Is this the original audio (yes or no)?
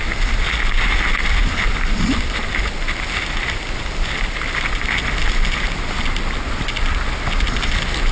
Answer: yes